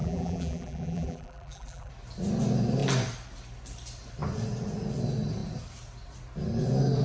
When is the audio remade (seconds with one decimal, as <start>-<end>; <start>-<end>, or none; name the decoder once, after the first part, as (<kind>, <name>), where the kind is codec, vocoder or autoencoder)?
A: 0.0-1.9 (vocoder, BigVGAN v2)